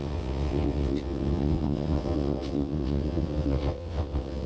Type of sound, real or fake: fake